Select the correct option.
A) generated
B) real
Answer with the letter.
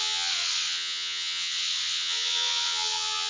A